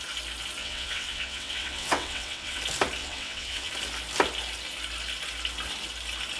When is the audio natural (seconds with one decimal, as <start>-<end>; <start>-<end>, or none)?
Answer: 0.0-0.6; 2.6-3.0; 3.7-6.4